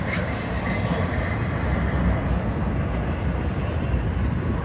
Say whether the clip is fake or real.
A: real